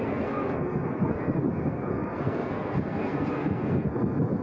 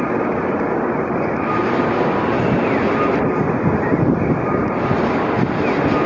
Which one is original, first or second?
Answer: second